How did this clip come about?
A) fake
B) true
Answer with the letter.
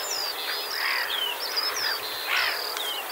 B